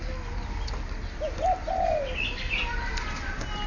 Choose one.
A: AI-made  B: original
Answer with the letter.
B